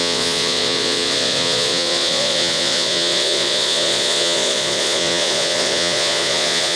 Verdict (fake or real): fake